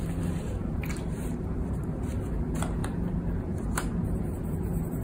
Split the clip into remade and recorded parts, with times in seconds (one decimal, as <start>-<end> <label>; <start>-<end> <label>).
0.0-5.0 remade